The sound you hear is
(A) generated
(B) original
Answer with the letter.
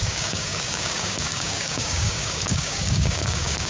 A